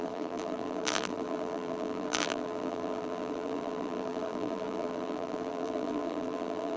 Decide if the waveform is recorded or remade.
remade